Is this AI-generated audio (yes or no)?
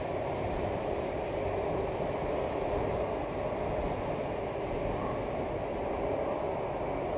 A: no